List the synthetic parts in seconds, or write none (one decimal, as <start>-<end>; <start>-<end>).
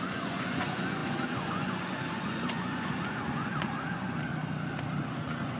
0.0-4.3; 5.0-5.6